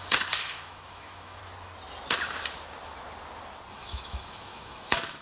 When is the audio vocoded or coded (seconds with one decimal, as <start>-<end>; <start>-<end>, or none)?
0.0-1.4; 3.7-5.2